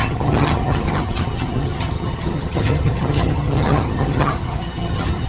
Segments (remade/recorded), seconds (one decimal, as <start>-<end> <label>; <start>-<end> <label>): 0.0-5.3 remade